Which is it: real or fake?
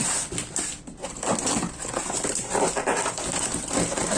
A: real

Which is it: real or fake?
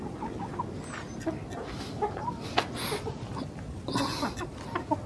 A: real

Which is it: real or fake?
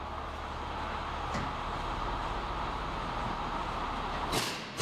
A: real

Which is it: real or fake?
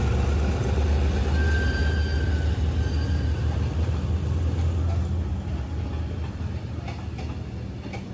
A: real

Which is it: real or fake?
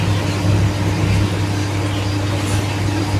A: real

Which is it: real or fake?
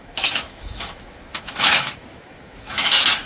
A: fake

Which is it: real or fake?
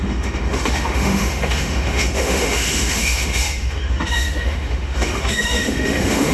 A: fake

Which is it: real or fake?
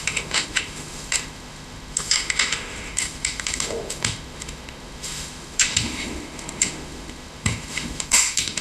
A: fake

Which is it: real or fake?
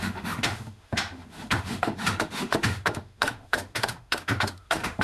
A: fake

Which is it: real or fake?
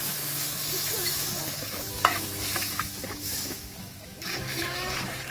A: fake